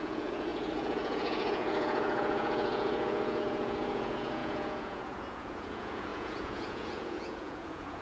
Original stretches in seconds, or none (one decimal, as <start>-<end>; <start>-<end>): none